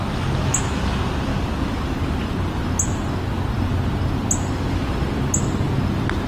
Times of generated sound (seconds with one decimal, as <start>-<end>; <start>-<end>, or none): none